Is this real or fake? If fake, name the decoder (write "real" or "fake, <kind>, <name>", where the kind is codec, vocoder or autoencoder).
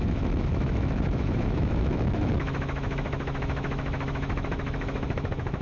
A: fake, autoencoder, DAC-VAE